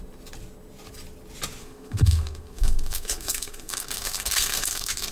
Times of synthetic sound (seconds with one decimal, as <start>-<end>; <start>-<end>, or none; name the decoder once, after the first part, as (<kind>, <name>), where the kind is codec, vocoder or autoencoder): 1.6-5.1 (codec, SNAC)